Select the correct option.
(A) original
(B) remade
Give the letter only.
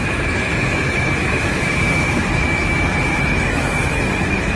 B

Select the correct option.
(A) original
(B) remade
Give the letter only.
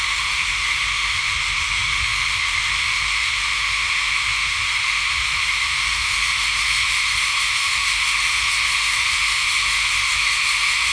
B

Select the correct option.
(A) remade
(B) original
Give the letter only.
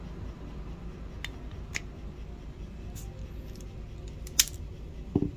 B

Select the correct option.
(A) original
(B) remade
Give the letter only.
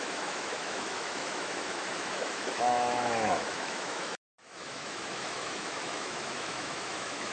B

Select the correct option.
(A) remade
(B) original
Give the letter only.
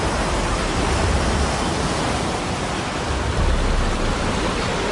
B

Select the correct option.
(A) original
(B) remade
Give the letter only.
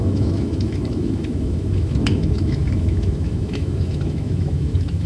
B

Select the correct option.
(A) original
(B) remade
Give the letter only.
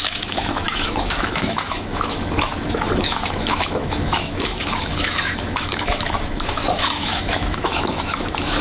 B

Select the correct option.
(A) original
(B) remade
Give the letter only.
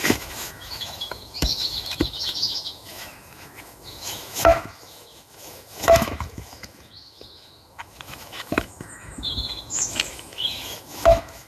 B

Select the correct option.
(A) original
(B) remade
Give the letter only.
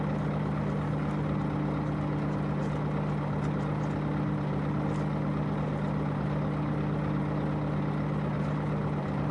A